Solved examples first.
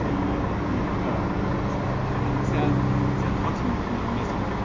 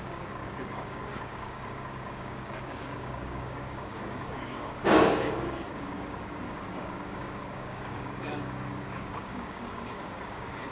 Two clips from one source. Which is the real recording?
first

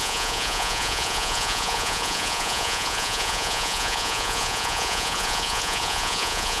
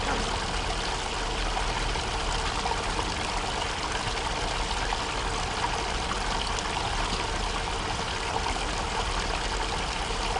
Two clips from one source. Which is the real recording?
second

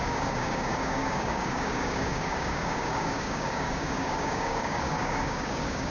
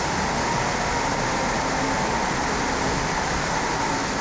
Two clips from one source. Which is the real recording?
second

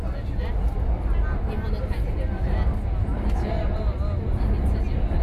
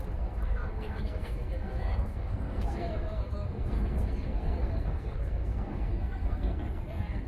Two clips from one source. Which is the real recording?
first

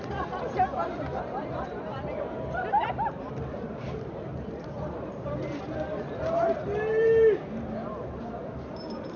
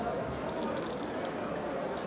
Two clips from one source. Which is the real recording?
second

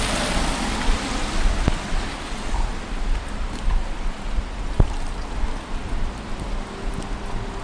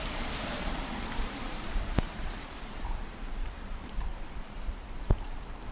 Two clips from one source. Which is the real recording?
first